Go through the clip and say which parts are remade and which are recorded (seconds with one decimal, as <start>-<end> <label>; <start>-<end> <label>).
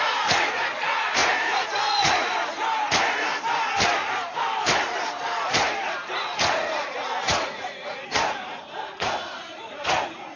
0.0-2.6 remade; 2.6-6.0 recorded; 6.0-10.4 remade